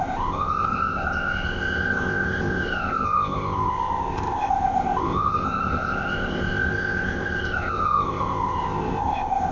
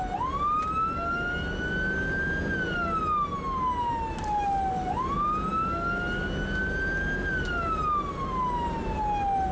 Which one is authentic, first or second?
second